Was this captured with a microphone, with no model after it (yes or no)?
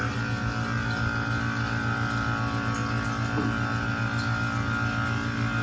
yes